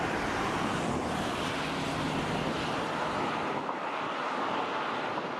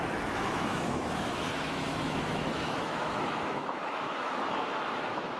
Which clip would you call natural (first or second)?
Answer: first